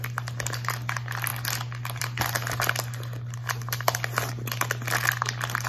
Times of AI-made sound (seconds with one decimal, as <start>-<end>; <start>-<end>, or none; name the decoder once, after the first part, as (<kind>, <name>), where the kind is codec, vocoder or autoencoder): none